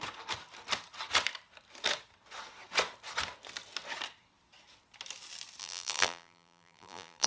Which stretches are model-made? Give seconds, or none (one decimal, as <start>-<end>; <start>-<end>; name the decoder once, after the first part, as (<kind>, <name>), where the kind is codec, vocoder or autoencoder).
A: 5.6-7.3 (vocoder, BigVGAN v2)